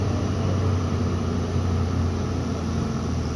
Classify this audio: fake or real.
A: real